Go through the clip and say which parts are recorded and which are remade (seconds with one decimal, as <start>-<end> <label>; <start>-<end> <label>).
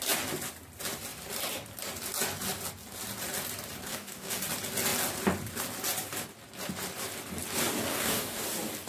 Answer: 0.0-3.9 recorded; 3.9-4.4 remade; 4.4-7.9 recorded; 7.9-8.4 remade; 8.4-8.9 recorded